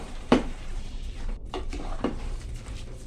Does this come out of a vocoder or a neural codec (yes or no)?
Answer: yes